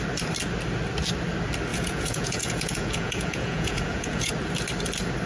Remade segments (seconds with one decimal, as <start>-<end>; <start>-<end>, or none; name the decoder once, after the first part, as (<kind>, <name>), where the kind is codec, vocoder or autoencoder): 1.7-4.3 (vocoder, Vocos)

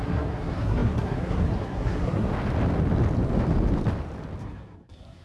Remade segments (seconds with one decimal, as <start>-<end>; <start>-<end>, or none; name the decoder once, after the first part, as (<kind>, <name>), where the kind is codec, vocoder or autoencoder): 0.0-2.3 (codec, SNAC); 4.4-5.2

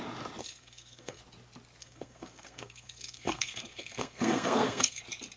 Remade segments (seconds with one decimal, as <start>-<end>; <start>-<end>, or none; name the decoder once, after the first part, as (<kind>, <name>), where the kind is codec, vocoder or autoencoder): 0.4-1.2 (codec, SNAC); 1.8-5.0

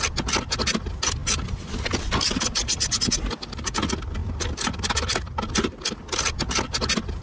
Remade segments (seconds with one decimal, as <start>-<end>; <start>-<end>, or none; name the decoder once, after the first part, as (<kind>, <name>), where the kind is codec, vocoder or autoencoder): none

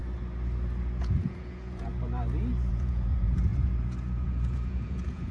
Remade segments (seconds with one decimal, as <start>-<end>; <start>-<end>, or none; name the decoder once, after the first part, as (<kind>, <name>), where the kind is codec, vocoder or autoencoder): 1.0-1.9 (vocoder, Vocos); 2.7-5.3

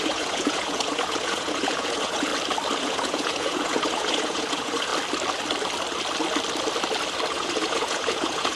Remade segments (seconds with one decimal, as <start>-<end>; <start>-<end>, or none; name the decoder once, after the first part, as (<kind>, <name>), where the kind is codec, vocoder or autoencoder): 0.0-2.3 (vocoder, Vocos); 2.8-4.9; 7.3-8.6